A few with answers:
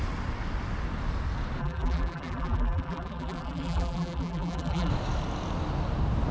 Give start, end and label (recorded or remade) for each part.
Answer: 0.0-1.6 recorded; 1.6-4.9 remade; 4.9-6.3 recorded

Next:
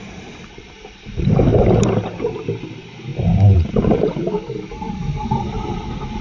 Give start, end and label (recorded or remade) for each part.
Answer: 0.0-1.5 remade; 1.5-2.7 recorded; 2.7-6.2 remade

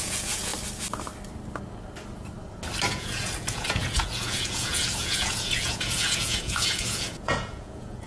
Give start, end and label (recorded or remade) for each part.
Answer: 0.0-0.5 remade; 0.5-2.9 recorded; 2.9-8.1 remade

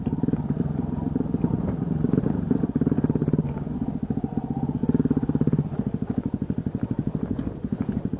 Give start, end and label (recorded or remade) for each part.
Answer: 0.0-8.2 remade